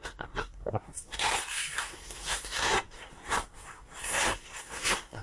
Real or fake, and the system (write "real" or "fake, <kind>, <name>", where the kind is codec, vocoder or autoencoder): fake, codec, SNAC